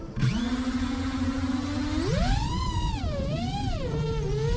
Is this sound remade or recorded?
recorded